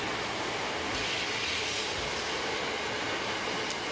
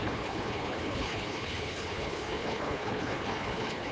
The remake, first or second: second